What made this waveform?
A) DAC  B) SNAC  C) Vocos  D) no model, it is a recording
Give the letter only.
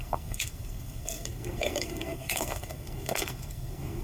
B